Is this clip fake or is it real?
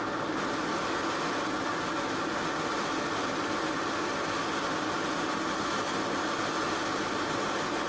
real